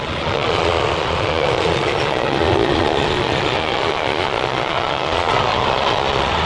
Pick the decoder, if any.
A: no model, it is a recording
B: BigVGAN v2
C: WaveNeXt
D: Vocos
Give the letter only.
D